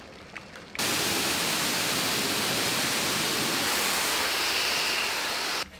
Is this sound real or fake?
fake